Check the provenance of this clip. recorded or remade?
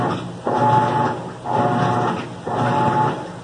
recorded